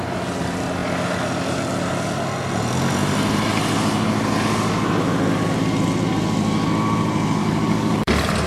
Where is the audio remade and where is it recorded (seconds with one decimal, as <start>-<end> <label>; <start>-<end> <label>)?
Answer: 0.0-7.4 recorded; 7.4-8.1 remade; 8.1-8.5 recorded